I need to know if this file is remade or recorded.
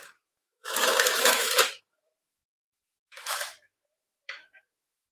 remade